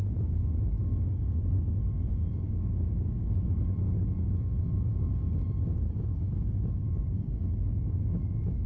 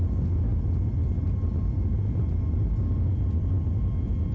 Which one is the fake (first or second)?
first